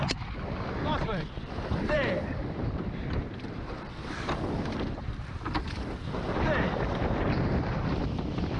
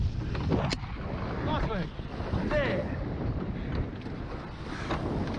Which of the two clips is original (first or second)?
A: second